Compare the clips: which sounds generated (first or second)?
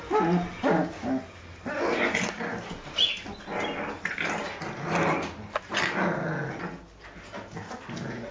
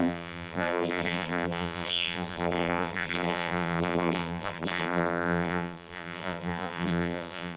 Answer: second